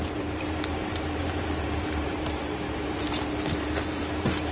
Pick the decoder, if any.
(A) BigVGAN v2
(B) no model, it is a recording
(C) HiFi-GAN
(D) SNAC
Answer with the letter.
A